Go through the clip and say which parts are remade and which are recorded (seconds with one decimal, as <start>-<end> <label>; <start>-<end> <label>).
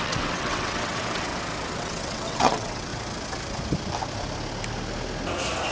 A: 0.0-1.3 remade; 1.3-1.8 recorded; 1.8-2.9 remade; 2.9-5.7 recorded